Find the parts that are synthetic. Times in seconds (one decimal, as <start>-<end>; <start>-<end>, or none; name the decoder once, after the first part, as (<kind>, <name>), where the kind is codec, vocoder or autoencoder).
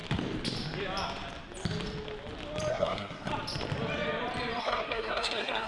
2.7-3.3 (codec, SNAC); 4.6-5.7